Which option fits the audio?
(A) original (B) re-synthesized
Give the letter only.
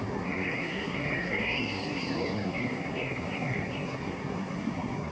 B